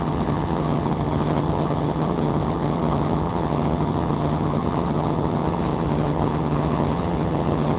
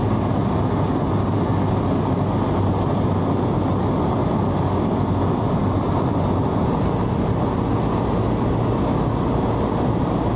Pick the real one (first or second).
second